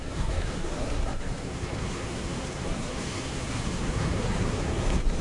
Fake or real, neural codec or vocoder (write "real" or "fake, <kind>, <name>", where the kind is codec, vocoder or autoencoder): fake, codec, SNAC